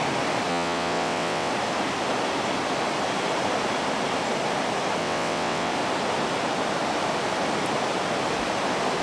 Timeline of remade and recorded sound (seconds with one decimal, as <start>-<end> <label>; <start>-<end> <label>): 0.0-0.5 recorded; 0.5-1.5 remade; 1.5-5.0 recorded; 5.0-5.7 remade; 5.7-9.0 recorded